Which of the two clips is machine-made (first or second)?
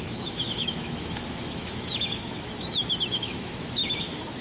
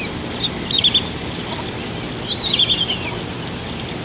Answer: first